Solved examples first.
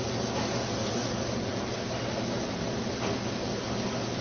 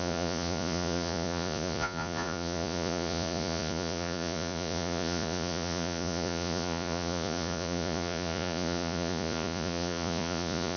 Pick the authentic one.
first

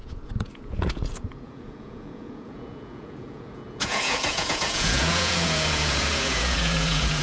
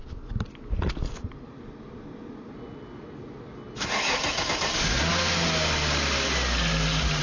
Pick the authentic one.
second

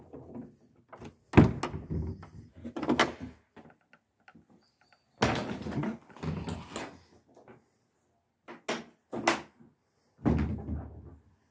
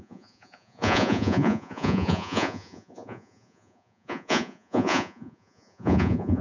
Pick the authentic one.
first